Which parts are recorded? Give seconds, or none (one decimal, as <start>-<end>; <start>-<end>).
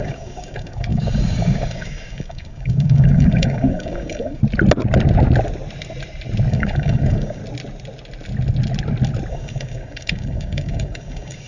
4.4-6.5; 7.4-9.3